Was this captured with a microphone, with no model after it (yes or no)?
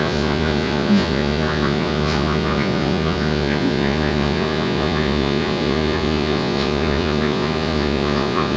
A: no